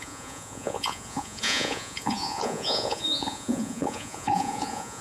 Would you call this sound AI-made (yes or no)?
yes